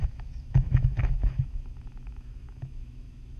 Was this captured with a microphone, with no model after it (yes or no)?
no